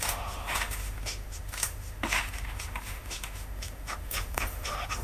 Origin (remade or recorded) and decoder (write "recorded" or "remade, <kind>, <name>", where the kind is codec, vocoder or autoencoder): remade, autoencoder, DAC-VAE